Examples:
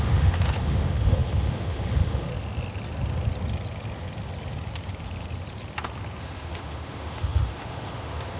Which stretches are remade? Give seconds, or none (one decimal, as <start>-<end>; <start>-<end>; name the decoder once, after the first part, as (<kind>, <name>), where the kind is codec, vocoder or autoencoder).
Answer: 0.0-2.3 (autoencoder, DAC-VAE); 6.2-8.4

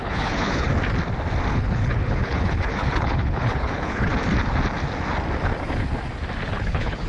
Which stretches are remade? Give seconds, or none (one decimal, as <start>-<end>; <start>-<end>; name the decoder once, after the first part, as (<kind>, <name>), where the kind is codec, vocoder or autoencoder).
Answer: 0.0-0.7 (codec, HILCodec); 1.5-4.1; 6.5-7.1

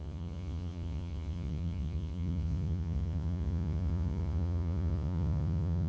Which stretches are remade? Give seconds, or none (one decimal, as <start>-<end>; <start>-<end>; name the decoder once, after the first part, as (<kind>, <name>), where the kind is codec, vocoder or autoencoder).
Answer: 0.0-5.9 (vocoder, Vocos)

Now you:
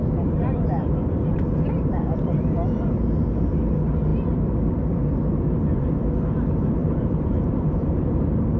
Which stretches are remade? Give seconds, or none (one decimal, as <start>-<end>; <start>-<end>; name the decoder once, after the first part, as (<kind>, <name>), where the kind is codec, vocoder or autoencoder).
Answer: 1.3-3.5 (vocoder, BigVGAN v2); 6.8-8.2

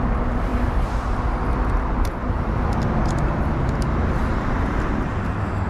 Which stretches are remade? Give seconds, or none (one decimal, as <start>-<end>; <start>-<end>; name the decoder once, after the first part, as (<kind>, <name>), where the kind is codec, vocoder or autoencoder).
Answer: none